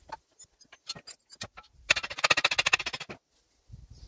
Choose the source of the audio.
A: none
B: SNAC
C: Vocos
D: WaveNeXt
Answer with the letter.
A